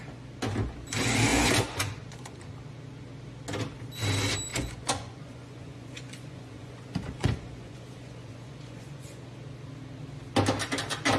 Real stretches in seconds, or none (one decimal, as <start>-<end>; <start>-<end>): 0.0-1.3; 2.4-4.5; 9.2-11.2